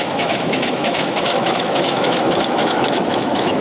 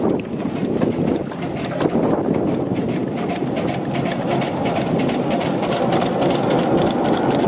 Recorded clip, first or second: second